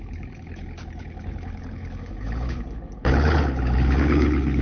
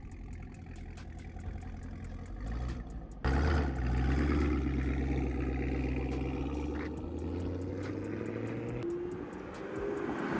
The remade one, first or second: first